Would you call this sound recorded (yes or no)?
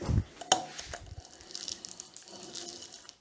yes